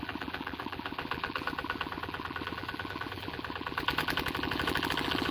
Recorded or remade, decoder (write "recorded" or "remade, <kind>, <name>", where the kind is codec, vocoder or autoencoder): remade, vocoder, BigVGAN v2